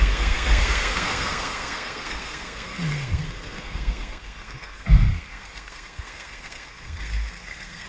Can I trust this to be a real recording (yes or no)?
no